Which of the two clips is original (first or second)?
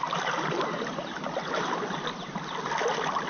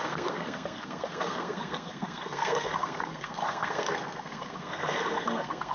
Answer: first